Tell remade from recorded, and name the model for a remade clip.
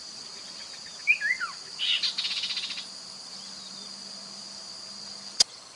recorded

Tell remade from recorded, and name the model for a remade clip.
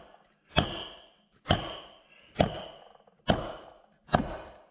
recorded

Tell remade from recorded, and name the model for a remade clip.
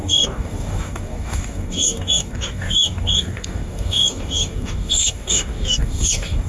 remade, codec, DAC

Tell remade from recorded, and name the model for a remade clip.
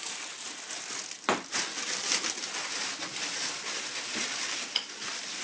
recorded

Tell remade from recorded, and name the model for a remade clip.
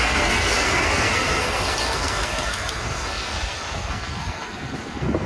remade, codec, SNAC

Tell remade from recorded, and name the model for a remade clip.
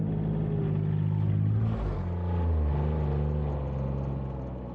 recorded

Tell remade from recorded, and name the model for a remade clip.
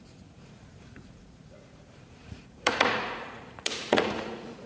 remade, vocoder, Vocos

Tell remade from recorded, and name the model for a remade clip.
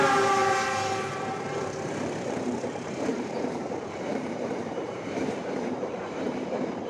remade, vocoder, BigVGAN v2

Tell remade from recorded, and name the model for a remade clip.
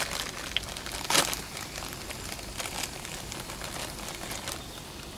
recorded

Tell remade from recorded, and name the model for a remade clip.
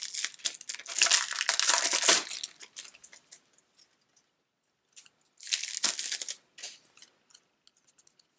recorded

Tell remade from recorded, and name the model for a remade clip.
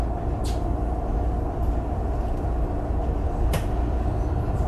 recorded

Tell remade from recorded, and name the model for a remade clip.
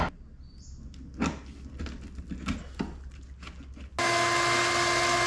recorded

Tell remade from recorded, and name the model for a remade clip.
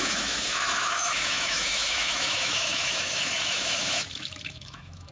remade, autoencoder, DAC-VAE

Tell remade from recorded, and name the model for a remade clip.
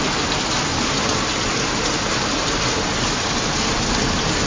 recorded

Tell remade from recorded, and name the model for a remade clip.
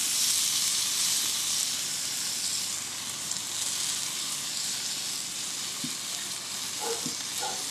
recorded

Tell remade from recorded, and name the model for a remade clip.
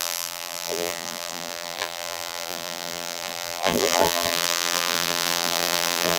remade, vocoder, BigVGAN v2